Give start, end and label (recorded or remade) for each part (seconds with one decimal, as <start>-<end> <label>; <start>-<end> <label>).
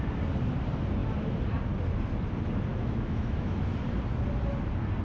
0.0-2.7 recorded; 2.7-3.6 remade; 3.6-5.0 recorded